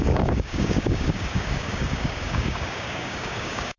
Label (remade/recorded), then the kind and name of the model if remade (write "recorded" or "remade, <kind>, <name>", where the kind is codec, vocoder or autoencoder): remade, codec, DAC